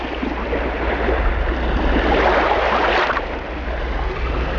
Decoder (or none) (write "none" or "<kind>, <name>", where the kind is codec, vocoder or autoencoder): none